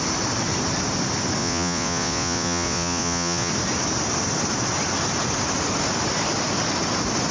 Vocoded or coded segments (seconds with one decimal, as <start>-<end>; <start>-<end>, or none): 1.4-3.5